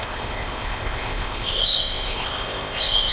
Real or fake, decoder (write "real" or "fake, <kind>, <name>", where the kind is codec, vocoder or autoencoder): fake, codec, ZipCodec